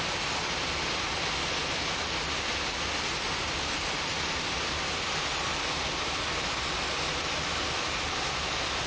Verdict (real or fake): real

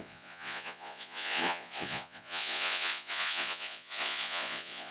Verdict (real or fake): fake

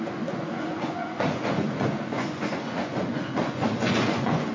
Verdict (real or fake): fake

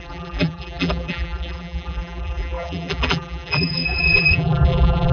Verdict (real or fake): fake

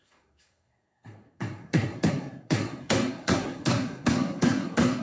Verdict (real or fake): fake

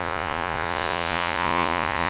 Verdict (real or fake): fake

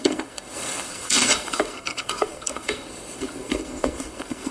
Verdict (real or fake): fake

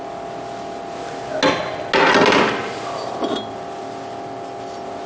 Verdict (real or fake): real